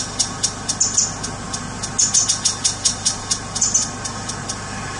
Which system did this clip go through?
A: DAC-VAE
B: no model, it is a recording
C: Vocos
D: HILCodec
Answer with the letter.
B